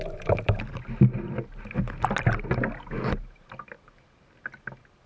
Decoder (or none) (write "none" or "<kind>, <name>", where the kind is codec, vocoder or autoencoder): none